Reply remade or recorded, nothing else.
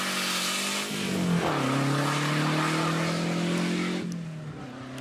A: recorded